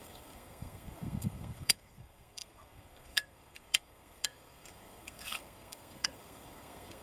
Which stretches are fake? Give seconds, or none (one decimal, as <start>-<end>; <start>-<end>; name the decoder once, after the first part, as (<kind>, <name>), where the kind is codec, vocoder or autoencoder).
0.0-7.0 (codec, SNAC)